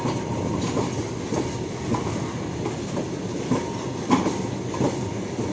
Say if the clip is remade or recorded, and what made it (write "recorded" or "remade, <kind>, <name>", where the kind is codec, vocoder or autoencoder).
recorded